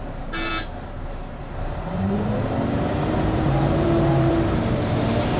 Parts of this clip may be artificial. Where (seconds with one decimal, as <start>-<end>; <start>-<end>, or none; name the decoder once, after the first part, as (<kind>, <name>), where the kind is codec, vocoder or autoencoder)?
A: 0.0-0.5 (vocoder, BigVGAN v2); 1.4-5.4